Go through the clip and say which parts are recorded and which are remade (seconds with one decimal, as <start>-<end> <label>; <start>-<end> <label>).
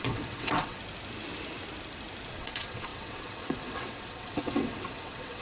0.0-0.8 remade; 0.8-2.3 recorded; 2.3-5.4 remade